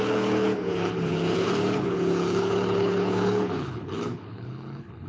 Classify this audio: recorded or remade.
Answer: remade